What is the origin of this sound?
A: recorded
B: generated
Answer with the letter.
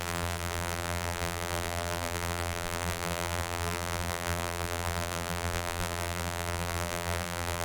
B